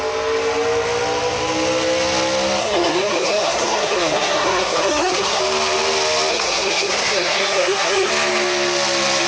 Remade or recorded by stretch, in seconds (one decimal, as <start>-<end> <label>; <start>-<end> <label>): 0.0-2.6 recorded; 2.6-5.4 remade; 5.4-6.3 recorded; 6.3-8.1 remade; 8.1-9.3 recorded